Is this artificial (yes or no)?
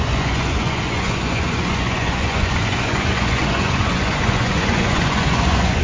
yes